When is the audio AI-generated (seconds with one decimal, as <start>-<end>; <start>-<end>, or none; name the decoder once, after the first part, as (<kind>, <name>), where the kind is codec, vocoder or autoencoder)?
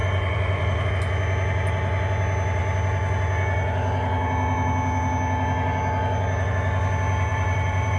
0.0-0.9 (vocoder, BigVGAN v2); 7.3-8.0